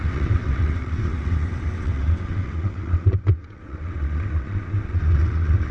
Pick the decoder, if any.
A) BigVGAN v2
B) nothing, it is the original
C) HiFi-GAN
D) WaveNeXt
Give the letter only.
D